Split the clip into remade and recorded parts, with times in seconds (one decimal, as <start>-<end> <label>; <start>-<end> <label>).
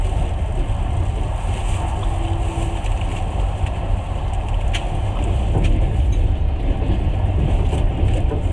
0.0-3.1 recorded; 3.1-4.2 remade; 4.2-8.5 recorded